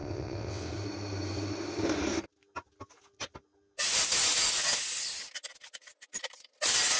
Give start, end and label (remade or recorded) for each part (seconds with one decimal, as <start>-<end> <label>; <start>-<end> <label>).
0.0-0.7 remade; 0.7-7.0 recorded